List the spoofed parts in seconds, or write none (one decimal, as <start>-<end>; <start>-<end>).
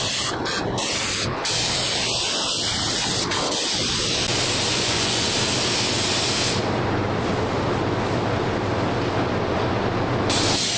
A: 4.7-5.3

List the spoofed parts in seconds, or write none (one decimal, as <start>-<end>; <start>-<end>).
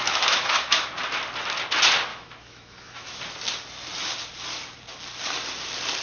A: 0.0-0.9; 2.1-3.2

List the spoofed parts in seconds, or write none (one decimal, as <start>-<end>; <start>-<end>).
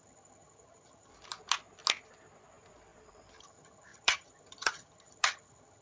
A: 0.0-1.1; 3.4-5.8